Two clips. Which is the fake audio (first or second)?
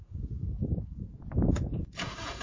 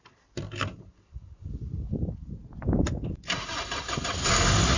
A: first